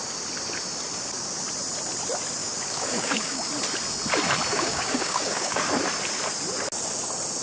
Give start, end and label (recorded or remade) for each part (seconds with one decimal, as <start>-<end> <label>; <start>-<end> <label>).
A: 0.0-2.4 recorded; 2.4-3.5 remade; 3.5-4.5 recorded; 4.5-5.7 remade; 5.7-7.4 recorded